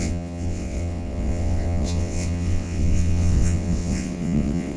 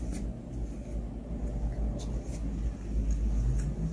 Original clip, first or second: second